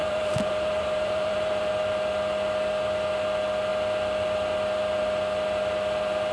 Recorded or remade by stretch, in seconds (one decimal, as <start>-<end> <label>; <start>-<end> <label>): 0.0-1.7 remade; 1.7-6.3 recorded